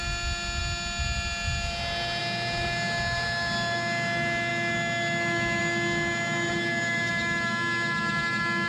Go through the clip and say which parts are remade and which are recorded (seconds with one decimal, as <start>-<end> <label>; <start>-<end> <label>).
0.0-8.7 recorded